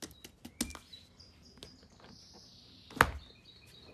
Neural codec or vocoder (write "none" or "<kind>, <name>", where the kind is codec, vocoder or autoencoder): none